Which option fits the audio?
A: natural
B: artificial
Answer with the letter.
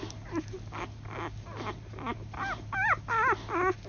A